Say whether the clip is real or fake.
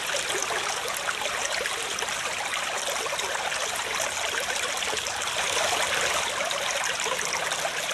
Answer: real